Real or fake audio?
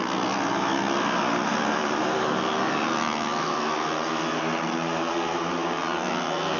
real